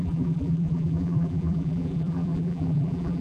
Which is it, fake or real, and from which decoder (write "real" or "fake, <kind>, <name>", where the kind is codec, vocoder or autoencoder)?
fake, vocoder, BigVGAN v2